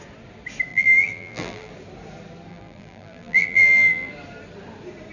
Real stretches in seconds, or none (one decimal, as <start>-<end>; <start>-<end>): 0.0-0.7; 1.7-2.5; 4.1-5.1